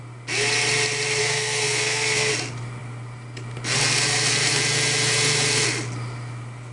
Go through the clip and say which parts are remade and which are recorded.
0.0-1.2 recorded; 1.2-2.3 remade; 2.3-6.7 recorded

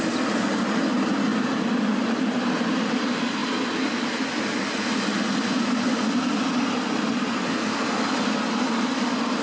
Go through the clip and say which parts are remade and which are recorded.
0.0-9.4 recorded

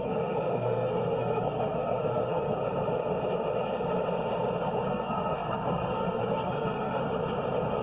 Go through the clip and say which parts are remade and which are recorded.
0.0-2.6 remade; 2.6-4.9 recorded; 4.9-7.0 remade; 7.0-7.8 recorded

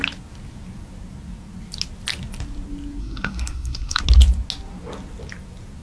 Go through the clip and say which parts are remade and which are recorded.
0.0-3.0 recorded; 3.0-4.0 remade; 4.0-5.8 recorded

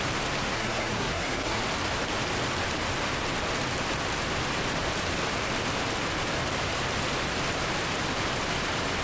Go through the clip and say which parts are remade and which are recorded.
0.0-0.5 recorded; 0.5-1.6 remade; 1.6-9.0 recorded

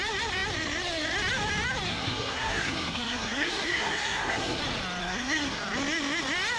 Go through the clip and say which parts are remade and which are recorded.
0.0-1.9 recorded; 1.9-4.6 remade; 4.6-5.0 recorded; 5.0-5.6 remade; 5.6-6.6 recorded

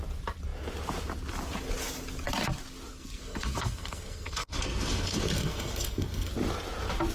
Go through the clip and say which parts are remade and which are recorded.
0.0-2.9 recorded; 2.9-6.3 remade; 6.3-7.1 recorded

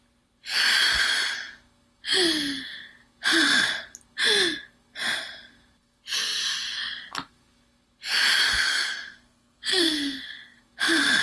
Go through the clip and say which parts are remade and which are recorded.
0.0-8.5 recorded; 8.5-10.6 remade; 10.6-11.2 recorded